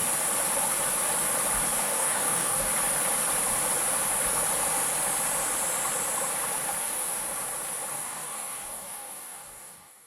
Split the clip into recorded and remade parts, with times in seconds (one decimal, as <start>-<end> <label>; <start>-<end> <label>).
0.0-1.8 recorded; 1.8-2.7 remade; 2.7-6.8 recorded; 6.8-7.2 remade; 7.2-7.9 recorded; 7.9-10.1 remade